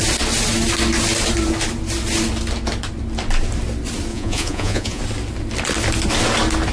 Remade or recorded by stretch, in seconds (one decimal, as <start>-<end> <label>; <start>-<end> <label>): 0.0-4.1 recorded; 4.1-5.0 remade; 5.0-6.7 recorded